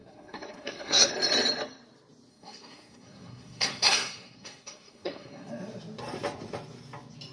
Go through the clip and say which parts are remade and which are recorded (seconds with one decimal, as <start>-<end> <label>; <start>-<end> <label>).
0.0-1.1 remade; 1.1-2.3 recorded; 2.3-5.5 remade; 5.5-7.3 recorded